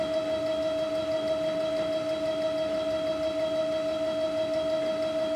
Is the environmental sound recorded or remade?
recorded